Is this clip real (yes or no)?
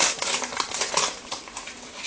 yes